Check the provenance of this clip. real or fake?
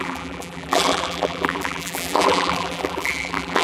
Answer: fake